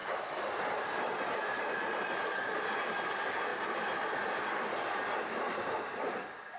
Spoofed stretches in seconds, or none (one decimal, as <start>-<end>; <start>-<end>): none